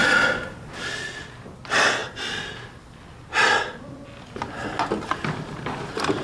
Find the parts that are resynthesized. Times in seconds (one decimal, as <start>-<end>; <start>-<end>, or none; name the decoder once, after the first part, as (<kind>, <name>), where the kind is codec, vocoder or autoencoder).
none